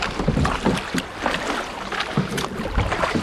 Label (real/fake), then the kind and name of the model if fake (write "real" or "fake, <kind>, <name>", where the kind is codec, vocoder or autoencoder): real